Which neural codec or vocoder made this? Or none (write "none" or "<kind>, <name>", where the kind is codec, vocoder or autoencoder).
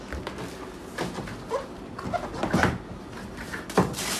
none